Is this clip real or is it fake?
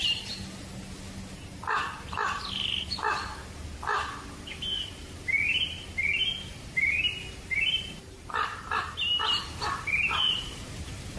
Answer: real